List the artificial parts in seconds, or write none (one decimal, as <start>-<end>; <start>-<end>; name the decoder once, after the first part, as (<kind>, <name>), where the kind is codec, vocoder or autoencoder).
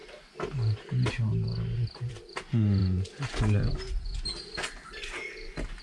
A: 2.8-3.9 (vocoder, BigVGAN v2)